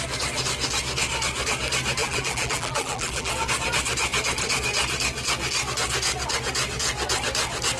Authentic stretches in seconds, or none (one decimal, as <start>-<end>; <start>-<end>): 0.0-2.0; 3.3-7.8